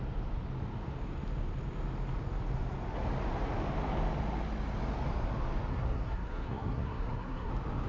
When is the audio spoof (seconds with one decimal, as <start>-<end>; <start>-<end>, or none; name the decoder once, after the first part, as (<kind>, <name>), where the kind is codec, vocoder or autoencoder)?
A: 5.7-7.5 (codec, SNAC)